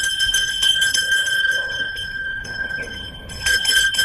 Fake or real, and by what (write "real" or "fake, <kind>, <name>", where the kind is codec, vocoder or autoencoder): fake, codec, HILCodec